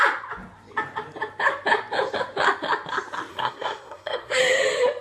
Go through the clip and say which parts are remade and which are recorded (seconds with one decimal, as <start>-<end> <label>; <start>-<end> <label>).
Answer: 0.0-3.3 recorded; 3.3-4.4 remade; 4.4-5.0 recorded